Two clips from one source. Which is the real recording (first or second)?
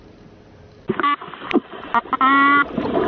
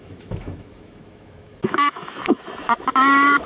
first